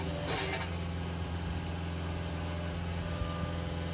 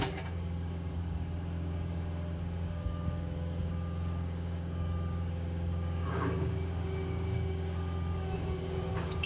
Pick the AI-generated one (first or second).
second